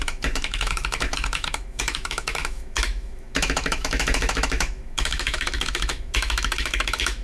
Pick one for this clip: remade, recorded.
remade